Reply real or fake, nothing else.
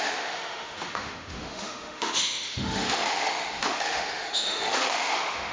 fake